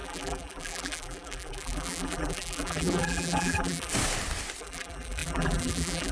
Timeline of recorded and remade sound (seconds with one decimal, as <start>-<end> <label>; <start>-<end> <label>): 0.0-3.9 remade; 3.9-4.6 recorded; 4.6-6.1 remade